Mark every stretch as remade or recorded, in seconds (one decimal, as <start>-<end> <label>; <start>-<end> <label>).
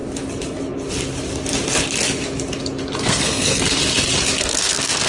0.0-3.0 recorded; 3.0-3.8 remade; 3.8-4.4 recorded; 4.4-5.1 remade